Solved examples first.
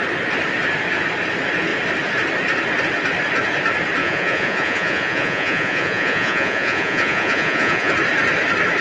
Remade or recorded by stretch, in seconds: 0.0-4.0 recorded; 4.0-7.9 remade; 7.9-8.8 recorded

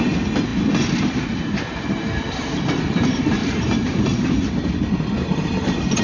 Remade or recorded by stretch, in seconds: 0.0-3.4 recorded; 3.4-4.3 remade; 4.3-5.2 recorded; 5.2-6.0 remade

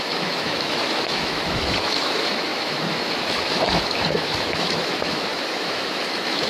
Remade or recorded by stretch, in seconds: 0.0-6.5 remade

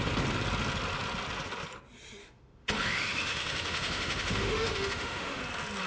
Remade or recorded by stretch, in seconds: 0.0-2.2 recorded; 2.2-5.4 remade; 5.4-5.9 recorded

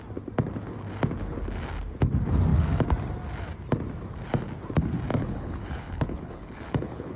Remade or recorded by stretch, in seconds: 0.0-5.1 recorded; 5.1-7.2 remade